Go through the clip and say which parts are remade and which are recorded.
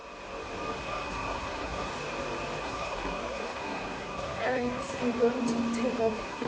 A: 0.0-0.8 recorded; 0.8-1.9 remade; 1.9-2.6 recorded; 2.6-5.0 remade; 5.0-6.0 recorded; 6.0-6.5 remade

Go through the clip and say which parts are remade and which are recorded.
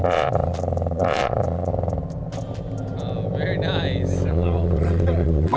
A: 0.0-1.7 remade; 1.7-4.3 recorded; 4.3-5.6 remade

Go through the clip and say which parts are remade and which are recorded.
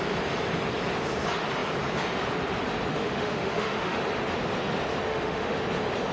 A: 0.0-2.9 recorded; 2.9-4.0 remade; 4.0-5.1 recorded; 5.1-5.6 remade; 5.6-6.1 recorded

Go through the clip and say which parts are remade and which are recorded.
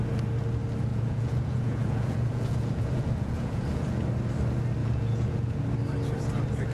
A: 0.0-0.9 recorded; 0.9-4.0 remade; 4.0-4.8 recorded; 4.8-5.6 remade; 5.6-6.7 recorded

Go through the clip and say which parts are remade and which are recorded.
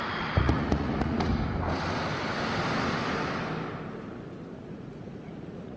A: 0.0-1.3 remade; 1.3-4.7 recorded; 4.7-5.8 remade